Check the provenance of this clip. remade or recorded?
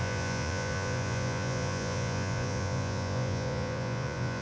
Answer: remade